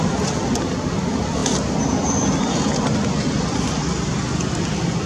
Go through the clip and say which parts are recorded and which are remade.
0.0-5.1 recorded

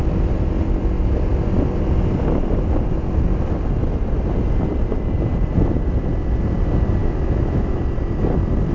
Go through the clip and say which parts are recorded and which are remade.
0.0-7.0 recorded; 7.0-7.8 remade; 7.8-8.7 recorded

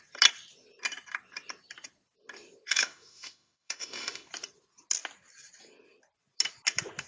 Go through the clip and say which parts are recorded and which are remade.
0.0-2.7 recorded; 2.7-4.3 remade; 4.3-7.1 recorded

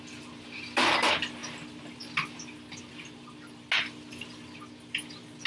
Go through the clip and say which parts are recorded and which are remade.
0.0-5.5 recorded